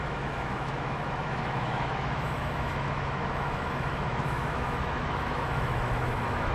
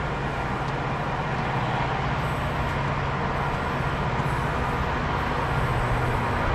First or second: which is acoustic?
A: second